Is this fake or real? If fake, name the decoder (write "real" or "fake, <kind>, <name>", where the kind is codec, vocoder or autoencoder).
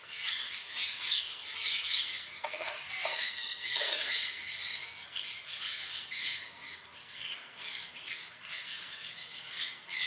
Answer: fake, codec, SNAC